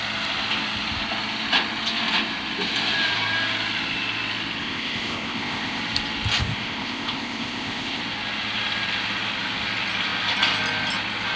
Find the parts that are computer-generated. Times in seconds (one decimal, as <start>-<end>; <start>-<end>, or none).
4.6-5.8; 6.4-8.0